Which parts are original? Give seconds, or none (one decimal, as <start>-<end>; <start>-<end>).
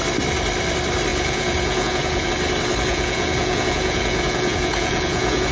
0.0-1.1; 2.3-2.9